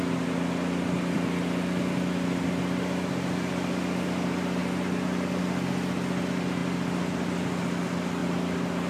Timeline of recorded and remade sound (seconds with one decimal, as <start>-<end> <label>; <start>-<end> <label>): 0.0-8.9 recorded